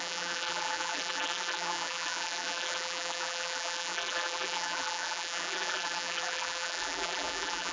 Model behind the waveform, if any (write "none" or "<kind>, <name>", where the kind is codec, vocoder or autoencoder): vocoder, BigVGAN v2